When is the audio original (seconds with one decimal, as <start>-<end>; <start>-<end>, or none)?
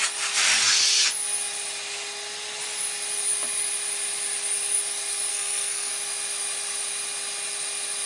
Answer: 0.0-5.3; 5.9-8.1